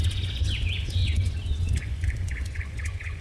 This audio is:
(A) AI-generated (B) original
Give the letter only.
A